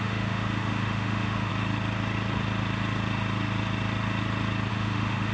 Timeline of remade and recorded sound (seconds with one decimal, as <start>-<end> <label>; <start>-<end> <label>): 0.0-1.5 remade; 1.5-4.7 recorded; 4.7-5.3 remade